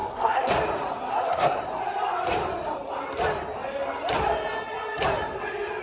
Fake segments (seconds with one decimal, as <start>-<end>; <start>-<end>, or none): 0.0-0.5; 1.1-1.6

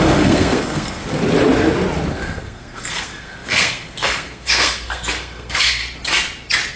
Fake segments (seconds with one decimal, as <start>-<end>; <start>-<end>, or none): 0.0-1.0; 2.1-5.8

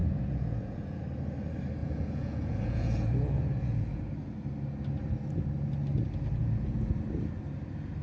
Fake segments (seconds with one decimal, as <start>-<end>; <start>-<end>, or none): 0.0-1.0; 1.8-4.0; 6.4-6.9

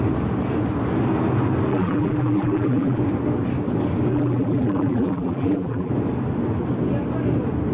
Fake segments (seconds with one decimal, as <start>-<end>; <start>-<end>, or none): 1.7-3.0; 4.1-5.9

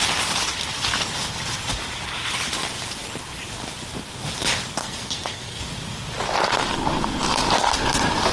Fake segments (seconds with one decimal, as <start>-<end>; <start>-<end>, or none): 4.8-5.6

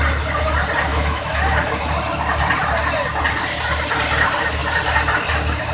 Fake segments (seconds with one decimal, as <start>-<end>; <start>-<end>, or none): 0.9-1.9

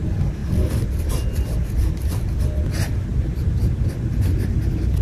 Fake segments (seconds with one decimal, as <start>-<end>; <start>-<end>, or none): none

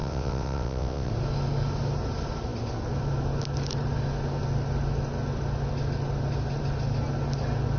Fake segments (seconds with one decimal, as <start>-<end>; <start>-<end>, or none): 0.0-1.1